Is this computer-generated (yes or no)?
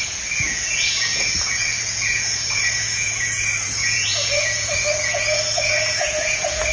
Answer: yes